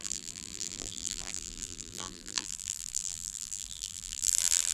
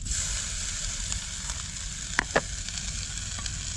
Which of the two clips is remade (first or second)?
first